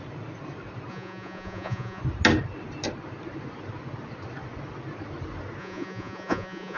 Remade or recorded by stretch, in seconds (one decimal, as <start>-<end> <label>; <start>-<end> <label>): 0.0-0.9 recorded; 0.9-2.0 remade; 2.0-5.6 recorded; 5.6-6.8 remade